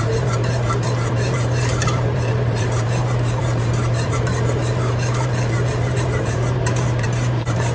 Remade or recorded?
remade